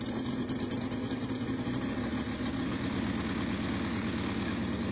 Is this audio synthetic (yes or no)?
no